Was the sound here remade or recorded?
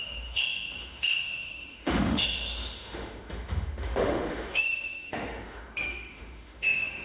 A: remade